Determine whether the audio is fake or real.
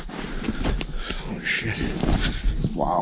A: real